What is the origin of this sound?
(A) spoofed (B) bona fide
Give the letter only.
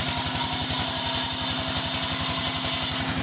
B